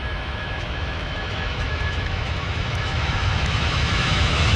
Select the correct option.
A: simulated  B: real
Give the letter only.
A